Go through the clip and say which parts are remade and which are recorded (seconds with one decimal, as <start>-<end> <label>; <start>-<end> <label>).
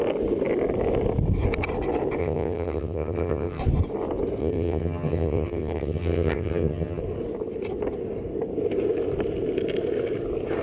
0.0-2.2 recorded; 2.2-3.6 remade; 3.6-4.4 recorded; 4.4-7.0 remade; 7.0-10.6 recorded